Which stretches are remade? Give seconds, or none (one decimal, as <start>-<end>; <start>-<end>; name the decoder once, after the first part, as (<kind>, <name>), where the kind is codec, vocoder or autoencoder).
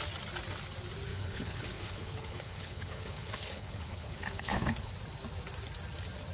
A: 1.1-4.9 (codec, HILCodec)